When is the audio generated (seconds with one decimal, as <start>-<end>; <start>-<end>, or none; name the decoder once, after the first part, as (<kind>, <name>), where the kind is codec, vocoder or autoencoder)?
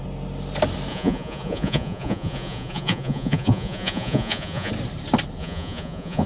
0.9-4.7 (vocoder, Vocos); 5.4-6.3